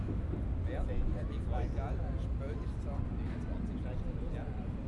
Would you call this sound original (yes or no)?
yes